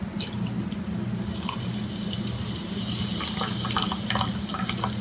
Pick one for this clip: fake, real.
real